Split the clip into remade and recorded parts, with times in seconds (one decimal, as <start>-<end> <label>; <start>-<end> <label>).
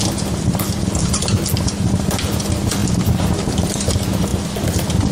0.0-2.8 recorded; 2.8-3.3 remade; 3.3-5.1 recorded